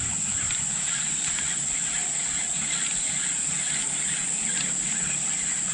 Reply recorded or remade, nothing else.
recorded